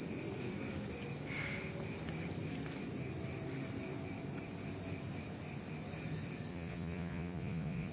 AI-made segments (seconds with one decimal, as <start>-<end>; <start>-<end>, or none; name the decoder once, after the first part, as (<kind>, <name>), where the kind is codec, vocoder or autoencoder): 6.5-7.9 (vocoder, Vocos)